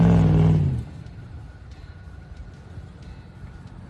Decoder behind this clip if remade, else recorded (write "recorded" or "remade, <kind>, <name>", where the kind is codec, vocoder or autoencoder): recorded